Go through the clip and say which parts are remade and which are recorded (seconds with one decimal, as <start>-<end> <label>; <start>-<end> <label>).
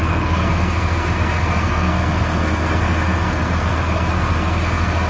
0.0-5.1 remade